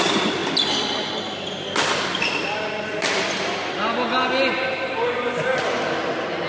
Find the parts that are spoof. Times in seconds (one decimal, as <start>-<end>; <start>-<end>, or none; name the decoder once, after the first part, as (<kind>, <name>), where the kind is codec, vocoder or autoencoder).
none